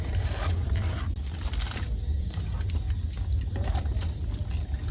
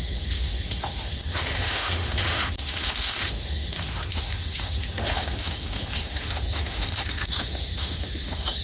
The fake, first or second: second